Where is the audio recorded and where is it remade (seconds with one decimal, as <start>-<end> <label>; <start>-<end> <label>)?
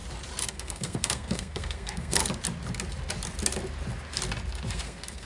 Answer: 0.0-0.5 recorded; 0.5-2.2 remade; 2.2-4.7 recorded; 4.7-5.3 remade